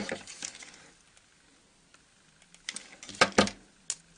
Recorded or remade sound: recorded